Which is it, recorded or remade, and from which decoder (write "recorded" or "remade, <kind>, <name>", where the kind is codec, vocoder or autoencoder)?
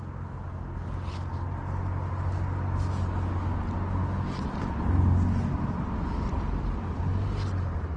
recorded